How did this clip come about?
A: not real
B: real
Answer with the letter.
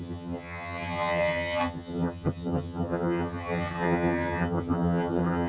A